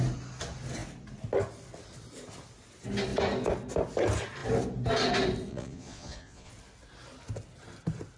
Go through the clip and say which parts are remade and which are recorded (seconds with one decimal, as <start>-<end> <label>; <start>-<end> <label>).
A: 0.0-5.5 recorded; 5.5-6.5 remade; 6.5-8.2 recorded